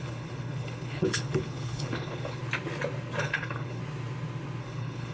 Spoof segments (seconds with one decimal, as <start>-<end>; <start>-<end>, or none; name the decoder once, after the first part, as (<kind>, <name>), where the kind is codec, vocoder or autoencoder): 0.0-2.4 (codec, HILCodec); 3.2-3.8; 4.6-5.1